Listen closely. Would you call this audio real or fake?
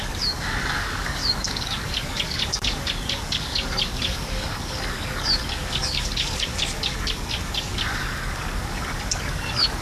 fake